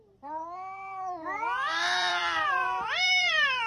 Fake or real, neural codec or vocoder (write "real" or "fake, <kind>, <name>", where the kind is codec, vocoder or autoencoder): fake, vocoder, BigVGAN v2